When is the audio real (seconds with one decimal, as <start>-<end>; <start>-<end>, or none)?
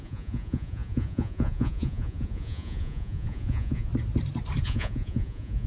3.9-4.6